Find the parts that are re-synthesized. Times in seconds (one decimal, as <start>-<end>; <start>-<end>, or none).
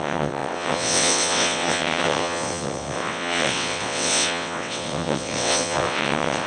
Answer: 0.0-6.5